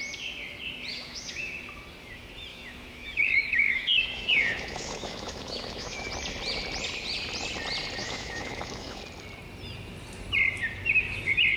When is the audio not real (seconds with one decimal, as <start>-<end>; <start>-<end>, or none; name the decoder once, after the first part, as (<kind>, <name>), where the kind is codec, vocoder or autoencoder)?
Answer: 0.9-1.5 (autoencoder, DAC-VAE); 2.5-6.1; 8.0-9.0